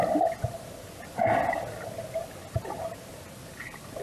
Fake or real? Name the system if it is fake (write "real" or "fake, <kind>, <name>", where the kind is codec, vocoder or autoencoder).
real